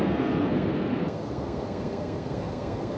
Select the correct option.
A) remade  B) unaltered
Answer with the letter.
A